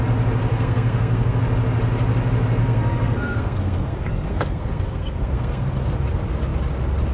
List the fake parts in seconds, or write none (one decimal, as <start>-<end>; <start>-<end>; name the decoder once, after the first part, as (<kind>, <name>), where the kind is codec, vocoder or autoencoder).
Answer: 0.5-1.4 (codec, SNAC); 2.6-5.9